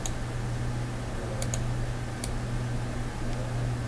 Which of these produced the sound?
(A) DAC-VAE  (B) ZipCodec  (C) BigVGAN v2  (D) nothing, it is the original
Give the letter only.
D